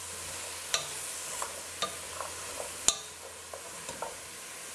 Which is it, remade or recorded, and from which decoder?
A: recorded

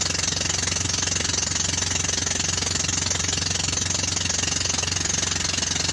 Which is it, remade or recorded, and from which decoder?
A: recorded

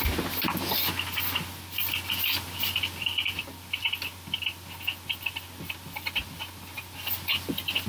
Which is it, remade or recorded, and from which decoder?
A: recorded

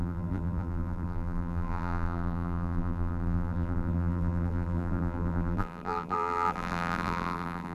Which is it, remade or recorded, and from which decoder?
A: remade, vocoder, BigVGAN v2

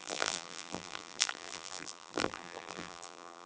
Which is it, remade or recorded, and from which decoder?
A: remade, vocoder, BigVGAN v2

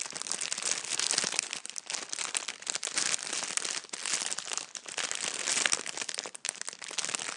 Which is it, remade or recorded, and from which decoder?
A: recorded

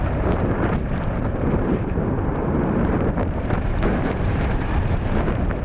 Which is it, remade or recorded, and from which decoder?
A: remade, vocoder, BigVGAN v2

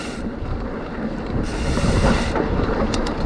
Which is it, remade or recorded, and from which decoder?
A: remade, vocoder, BigVGAN v2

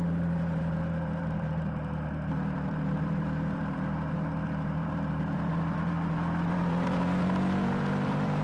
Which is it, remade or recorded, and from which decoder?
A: remade, vocoder, BigVGAN v2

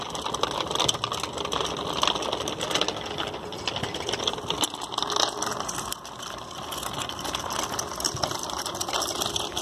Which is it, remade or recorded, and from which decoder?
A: recorded